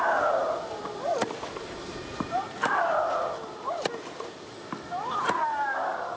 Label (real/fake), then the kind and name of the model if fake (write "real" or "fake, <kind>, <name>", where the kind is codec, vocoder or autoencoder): real